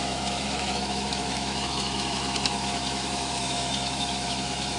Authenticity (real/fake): fake